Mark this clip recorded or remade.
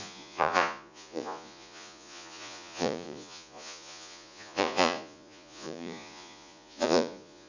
remade